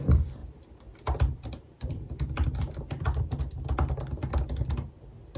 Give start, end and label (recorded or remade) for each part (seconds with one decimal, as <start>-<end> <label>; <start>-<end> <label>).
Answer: 0.0-0.4 recorded; 0.4-3.4 remade; 3.4-5.4 recorded